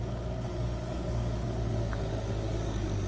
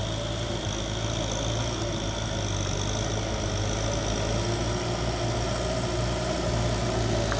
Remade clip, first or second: first